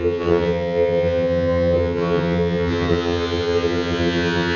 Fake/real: fake